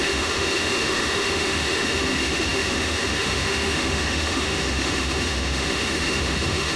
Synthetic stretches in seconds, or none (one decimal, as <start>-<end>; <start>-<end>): 0.0-6.8